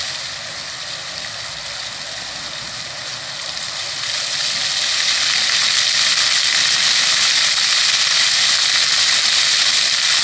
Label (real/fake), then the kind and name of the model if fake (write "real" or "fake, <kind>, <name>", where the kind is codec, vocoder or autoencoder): real